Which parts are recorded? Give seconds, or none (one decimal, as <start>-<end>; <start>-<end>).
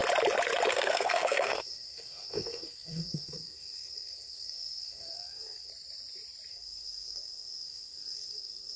0.0-0.7; 5.7-6.5